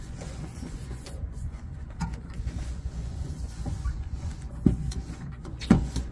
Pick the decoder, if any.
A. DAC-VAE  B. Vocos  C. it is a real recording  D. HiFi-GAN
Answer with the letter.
B